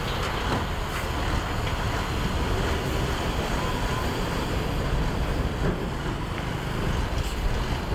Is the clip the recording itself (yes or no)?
yes